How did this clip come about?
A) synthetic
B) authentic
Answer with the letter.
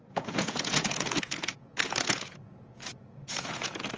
A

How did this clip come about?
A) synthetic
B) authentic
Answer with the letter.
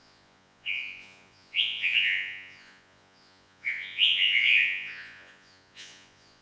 A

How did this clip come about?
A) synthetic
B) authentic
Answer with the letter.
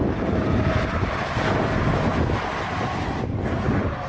B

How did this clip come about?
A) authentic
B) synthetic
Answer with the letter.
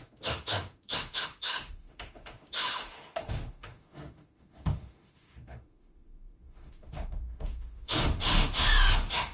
B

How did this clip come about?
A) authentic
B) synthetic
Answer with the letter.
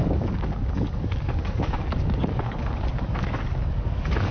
B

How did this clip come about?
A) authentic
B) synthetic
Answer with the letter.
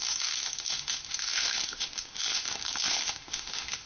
B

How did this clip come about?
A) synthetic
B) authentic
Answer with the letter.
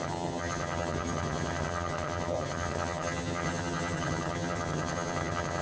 A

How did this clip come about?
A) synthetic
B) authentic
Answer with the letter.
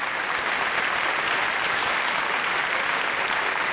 B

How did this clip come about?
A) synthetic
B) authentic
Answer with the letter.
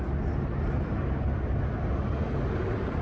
B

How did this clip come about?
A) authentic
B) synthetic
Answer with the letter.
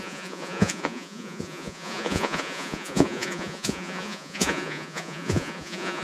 B